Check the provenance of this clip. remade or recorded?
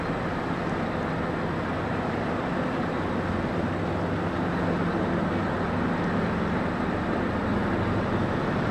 recorded